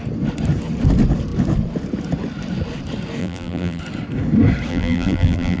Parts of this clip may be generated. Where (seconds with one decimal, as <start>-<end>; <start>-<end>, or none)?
3.2-3.8; 4.7-5.6